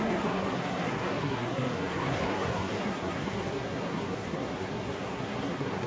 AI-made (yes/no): yes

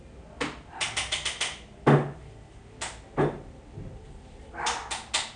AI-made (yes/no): no